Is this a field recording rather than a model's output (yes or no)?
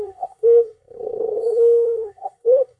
no